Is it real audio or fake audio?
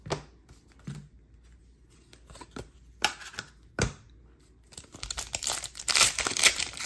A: real